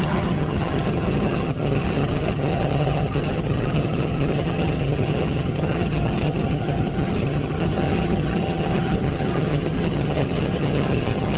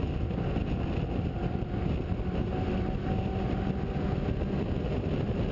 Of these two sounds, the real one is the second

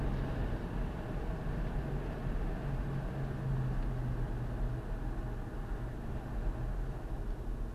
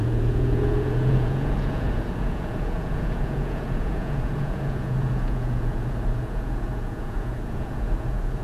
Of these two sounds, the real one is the first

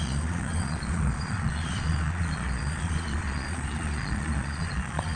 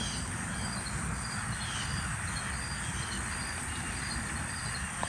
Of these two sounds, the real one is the second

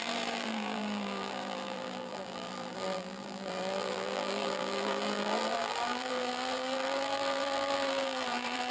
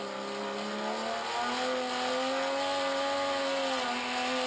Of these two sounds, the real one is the second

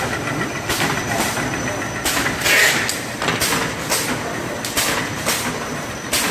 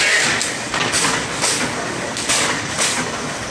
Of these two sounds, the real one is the first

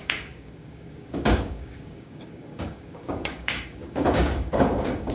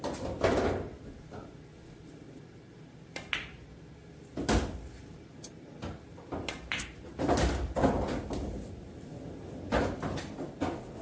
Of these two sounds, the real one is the second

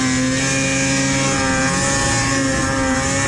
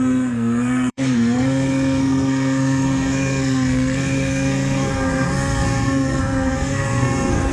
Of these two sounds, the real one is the first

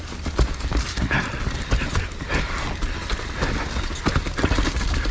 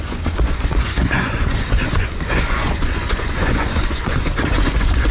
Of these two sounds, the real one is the first